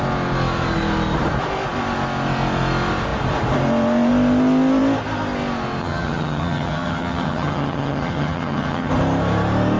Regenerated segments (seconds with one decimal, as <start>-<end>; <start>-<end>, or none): 5.8-8.9